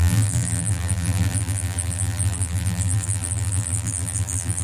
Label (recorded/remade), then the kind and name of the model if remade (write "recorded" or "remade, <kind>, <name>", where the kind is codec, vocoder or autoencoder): remade, vocoder, BigVGAN v2